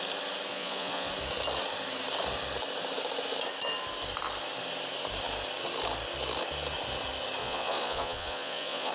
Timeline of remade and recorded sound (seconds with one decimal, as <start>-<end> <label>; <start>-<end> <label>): 0.0-0.5 recorded; 0.5-1.1 remade; 1.1-7.4 recorded; 7.4-8.9 remade